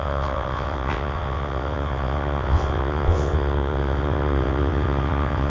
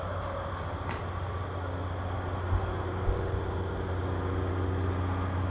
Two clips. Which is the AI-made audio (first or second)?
first